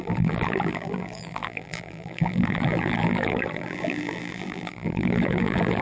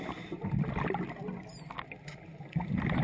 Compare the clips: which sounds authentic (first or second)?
second